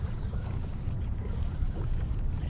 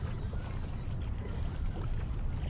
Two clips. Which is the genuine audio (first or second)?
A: second